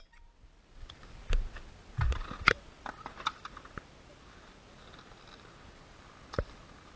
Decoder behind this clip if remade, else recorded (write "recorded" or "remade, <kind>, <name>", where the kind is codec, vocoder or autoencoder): recorded